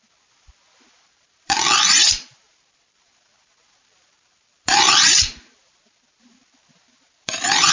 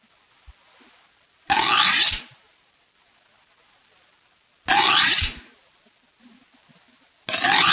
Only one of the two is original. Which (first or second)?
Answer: second